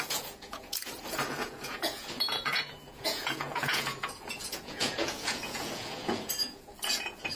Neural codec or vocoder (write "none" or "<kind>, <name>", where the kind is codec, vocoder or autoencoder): vocoder, Vocos